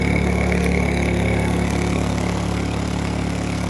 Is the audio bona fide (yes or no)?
no